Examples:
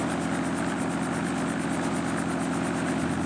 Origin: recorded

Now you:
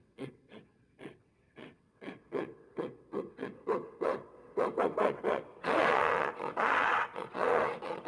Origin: remade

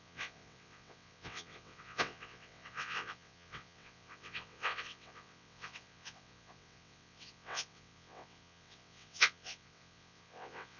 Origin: remade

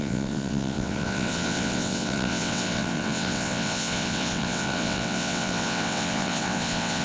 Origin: remade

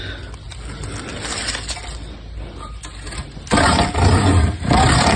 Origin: recorded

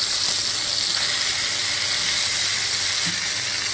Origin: recorded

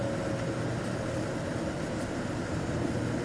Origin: recorded